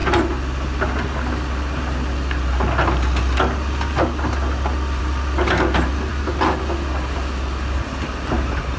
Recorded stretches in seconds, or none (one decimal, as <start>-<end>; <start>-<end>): 0.0-8.8